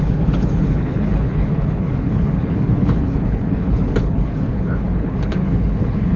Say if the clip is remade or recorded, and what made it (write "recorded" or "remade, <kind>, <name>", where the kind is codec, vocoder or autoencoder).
remade, codec, HILCodec